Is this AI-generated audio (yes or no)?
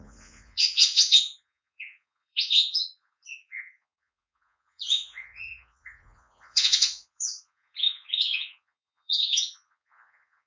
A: yes